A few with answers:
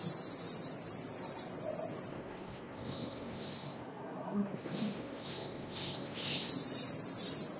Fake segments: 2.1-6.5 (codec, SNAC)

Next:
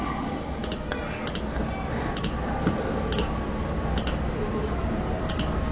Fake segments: 4.4-5.3 (vocoder, BigVGAN v2)

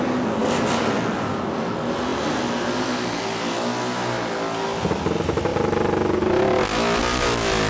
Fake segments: none

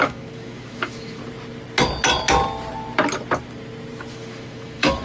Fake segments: 0.0-1.2 (autoencoder, DAC-VAE); 4.1-5.0

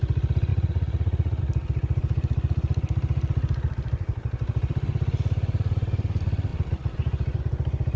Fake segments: 0.5-1.4 (vocoder, Vocos)

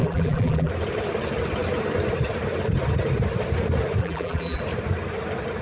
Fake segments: 0.0-0.7 (vocoder, BigVGAN v2); 4.0-4.6

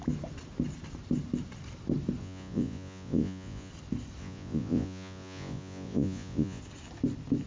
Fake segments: 2.2-3.7 (vocoder, Vocos); 4.2-6.6